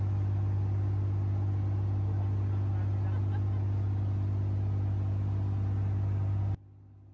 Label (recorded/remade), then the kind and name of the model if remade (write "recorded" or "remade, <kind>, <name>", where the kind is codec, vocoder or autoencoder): recorded